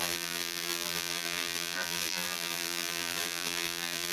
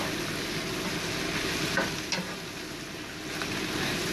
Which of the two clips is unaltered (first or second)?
second